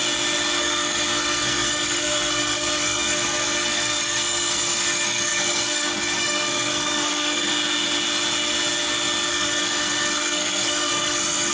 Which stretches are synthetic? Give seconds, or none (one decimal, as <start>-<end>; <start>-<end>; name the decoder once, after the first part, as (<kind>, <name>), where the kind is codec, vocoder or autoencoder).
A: 0.6-7.5 (codec, SNAC); 9.3-11.5